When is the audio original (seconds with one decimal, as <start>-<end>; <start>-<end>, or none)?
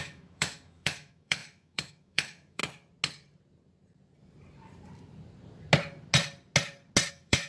2.6-7.1